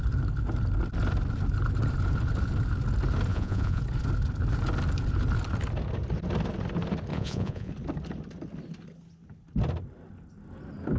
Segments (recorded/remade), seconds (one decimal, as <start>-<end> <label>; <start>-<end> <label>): 0.0-3.3 recorded; 3.3-3.8 remade; 3.8-7.1 recorded; 7.1-7.7 remade; 7.7-11.0 recorded